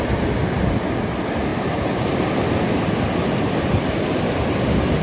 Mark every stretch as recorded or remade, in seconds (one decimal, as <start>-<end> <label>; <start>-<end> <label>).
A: 0.0-1.5 recorded; 1.5-2.2 remade; 2.2-5.0 recorded